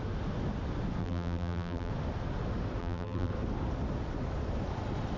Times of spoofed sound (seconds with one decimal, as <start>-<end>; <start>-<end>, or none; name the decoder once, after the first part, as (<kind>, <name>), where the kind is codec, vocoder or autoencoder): 1.0-1.9 (vocoder, BigVGAN v2); 2.8-3.3